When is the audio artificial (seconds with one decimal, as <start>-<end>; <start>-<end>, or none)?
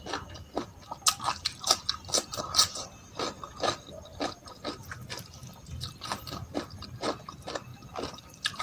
none